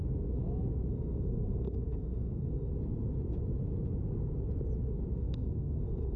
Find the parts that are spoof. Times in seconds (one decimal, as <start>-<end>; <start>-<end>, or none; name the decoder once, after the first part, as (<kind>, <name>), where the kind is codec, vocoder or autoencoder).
0.9-2.7 (codec, SNAC); 5.2-6.2